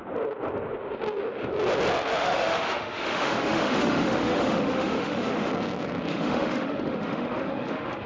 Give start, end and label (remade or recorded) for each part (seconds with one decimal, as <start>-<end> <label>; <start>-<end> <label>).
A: 0.0-2.2 recorded; 2.2-5.5 remade; 5.5-6.1 recorded; 6.1-8.1 remade